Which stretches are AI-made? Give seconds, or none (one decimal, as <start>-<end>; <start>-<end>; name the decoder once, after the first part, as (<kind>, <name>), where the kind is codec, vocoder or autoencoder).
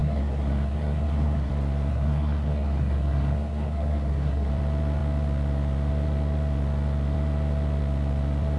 0.0-1.5 (codec, SNAC); 1.9-4.5